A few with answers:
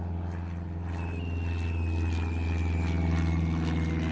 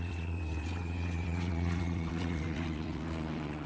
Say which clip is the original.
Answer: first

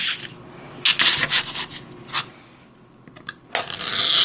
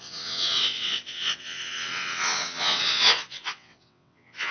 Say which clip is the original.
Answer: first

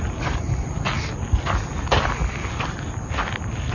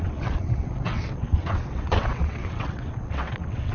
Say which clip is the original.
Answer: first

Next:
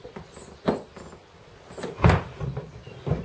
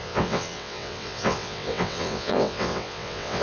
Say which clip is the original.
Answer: first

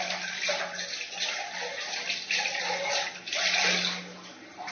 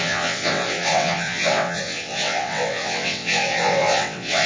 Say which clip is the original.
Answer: first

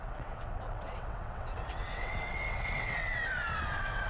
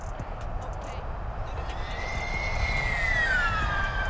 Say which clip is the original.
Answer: second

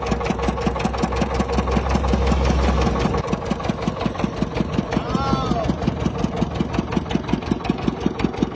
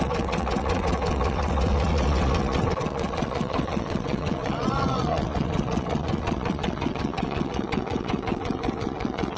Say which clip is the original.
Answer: first